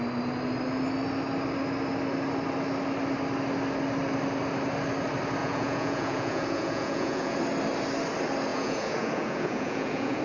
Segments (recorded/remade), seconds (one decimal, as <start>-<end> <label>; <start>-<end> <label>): 0.0-5.4 recorded; 5.4-7.4 remade; 7.4-8.5 recorded; 8.5-10.2 remade